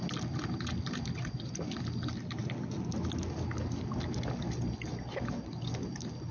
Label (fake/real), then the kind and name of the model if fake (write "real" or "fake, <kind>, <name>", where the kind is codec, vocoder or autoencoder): real